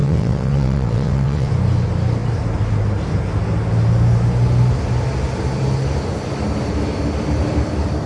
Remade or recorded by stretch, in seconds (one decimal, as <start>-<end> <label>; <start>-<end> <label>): 0.0-1.5 remade; 1.5-8.1 recorded